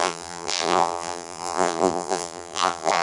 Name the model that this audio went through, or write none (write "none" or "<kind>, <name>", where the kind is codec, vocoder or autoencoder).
vocoder, BigVGAN v2